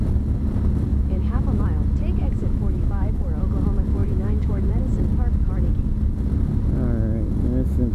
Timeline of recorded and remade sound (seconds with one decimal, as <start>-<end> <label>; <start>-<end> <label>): 0.0-0.9 recorded; 0.9-1.6 remade; 1.6-2.2 recorded; 2.2-3.1 remade; 3.1-4.0 recorded; 4.0-4.7 remade; 4.7-7.9 recorded